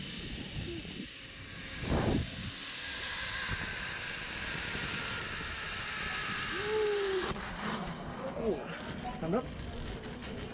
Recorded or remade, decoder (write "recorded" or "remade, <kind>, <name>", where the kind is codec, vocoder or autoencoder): recorded